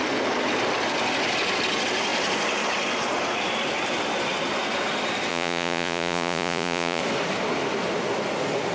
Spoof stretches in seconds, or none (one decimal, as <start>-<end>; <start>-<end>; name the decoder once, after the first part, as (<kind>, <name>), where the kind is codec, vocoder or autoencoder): 5.3-7.0 (vocoder, Vocos)